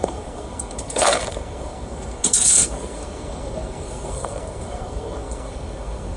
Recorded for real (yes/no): no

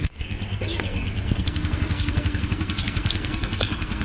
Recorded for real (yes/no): no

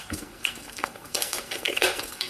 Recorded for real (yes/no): no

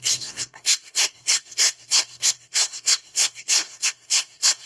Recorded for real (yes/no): no